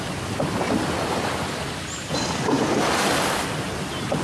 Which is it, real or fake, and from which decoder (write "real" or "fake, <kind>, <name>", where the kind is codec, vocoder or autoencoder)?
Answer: real